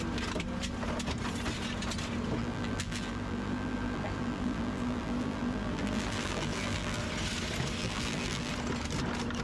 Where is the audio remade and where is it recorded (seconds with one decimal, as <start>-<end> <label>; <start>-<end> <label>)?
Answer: 0.0-2.4 recorded; 2.4-7.0 remade; 7.0-7.8 recorded; 7.8-8.5 remade; 8.5-9.4 recorded